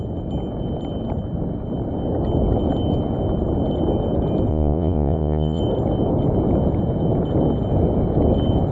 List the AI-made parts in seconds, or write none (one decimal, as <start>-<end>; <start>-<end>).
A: 4.5-5.6